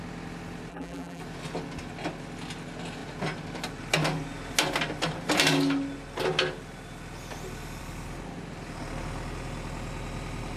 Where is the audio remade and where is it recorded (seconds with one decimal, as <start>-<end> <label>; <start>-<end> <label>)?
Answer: 0.0-0.7 recorded; 0.7-1.2 remade; 1.2-10.6 recorded